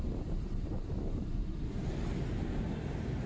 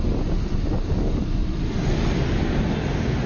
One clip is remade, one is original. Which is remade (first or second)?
first